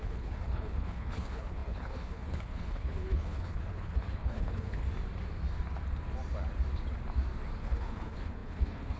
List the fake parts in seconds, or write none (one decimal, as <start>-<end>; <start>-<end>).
0.0-4.8; 7.6-9.0